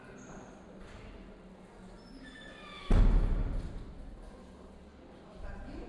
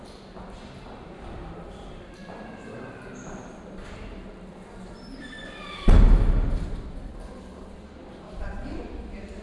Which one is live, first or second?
first